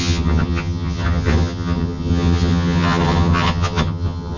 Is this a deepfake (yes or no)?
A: yes